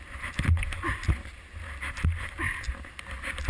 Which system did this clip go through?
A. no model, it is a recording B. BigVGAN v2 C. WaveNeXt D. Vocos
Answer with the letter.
A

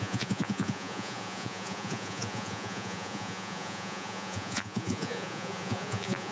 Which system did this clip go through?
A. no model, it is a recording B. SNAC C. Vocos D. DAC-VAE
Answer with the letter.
C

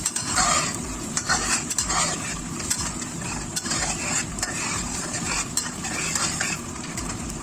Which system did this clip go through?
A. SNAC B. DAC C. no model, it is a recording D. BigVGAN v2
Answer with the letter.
D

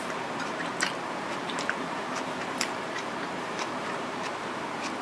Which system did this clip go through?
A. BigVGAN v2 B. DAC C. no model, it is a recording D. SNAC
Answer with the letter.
A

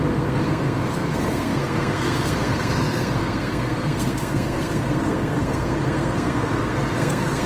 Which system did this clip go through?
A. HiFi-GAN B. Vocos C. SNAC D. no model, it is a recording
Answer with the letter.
C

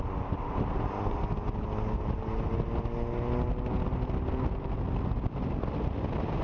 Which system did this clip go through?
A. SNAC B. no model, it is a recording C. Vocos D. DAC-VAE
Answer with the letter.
B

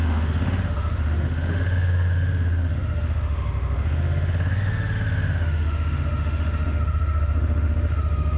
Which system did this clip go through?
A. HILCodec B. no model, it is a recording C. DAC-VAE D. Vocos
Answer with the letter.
C